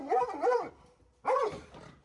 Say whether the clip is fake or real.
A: real